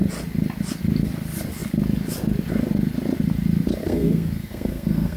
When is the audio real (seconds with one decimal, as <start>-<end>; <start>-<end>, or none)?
0.0-3.8